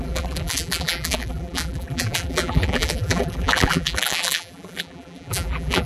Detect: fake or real fake